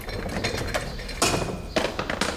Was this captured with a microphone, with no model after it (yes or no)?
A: yes